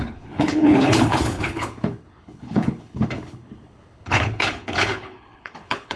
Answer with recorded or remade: remade